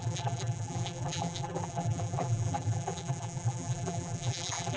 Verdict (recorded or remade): remade